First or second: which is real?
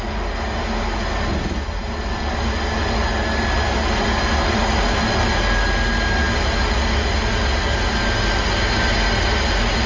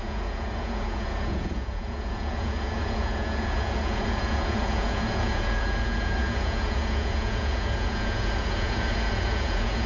first